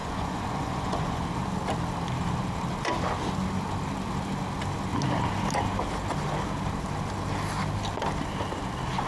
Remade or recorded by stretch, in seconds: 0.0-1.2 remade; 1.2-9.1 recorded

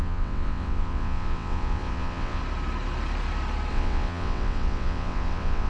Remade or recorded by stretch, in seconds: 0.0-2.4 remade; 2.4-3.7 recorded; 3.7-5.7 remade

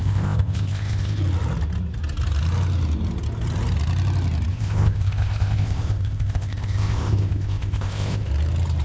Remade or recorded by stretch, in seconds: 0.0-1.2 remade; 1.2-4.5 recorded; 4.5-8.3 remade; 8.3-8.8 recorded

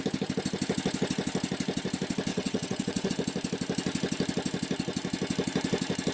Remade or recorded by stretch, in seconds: 0.0-2.3 recorded; 2.3-3.1 remade; 3.1-6.1 recorded

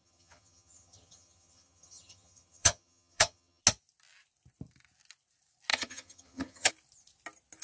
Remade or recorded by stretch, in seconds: 0.0-3.6 remade; 3.6-5.7 recorded; 5.7-6.7 remade; 6.7-7.6 recorded

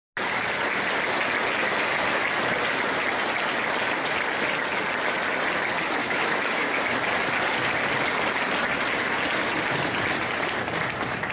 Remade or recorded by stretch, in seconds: 0.0-6.0 recorded; 6.0-6.8 remade; 6.8-11.3 recorded

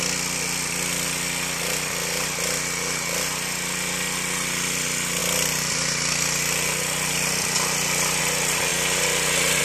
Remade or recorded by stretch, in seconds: 0.0-9.6 recorded

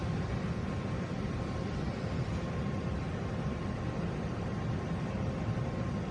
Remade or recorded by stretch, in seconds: 0.0-3.7 remade; 3.7-6.1 recorded